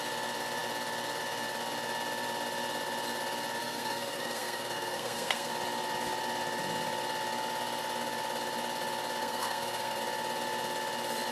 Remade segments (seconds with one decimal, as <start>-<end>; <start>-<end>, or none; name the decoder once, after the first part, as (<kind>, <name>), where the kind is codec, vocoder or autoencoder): 3.6-5.5 (codec, SNAC); 9.2-10.0

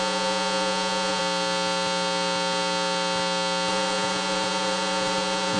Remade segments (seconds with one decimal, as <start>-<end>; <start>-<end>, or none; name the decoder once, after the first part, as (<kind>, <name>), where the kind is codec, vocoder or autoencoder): 0.0-1.2 (vocoder, Vocos); 3.7-5.6

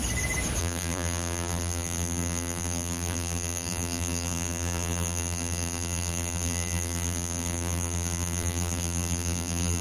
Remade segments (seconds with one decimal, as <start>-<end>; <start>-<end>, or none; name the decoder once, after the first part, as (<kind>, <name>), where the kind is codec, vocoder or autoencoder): 0.6-9.8 (vocoder, BigVGAN v2)

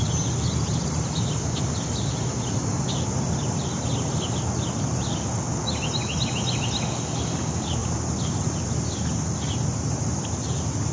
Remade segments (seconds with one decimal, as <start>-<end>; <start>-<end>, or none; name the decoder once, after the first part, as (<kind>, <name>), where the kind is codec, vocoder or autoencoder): none

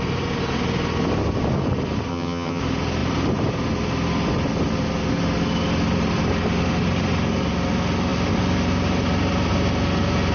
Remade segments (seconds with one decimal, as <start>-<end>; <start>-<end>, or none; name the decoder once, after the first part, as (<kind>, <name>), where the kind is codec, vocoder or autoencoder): 2.1-2.6 (vocoder, HiFi-GAN)

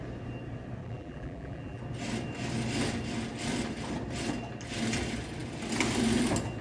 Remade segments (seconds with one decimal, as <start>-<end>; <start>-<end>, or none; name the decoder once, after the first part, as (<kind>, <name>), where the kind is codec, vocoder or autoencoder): 0.8-1.8 (vocoder, BigVGAN v2)

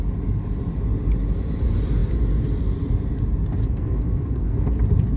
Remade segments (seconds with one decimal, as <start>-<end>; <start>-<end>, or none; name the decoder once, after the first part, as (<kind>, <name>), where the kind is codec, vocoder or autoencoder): 3.6-4.7 (codec, SNAC)